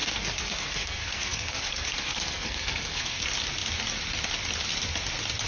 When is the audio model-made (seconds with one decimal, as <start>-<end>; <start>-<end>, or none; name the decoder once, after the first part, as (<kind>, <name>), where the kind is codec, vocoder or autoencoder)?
0.0-3.2 (codec, SNAC)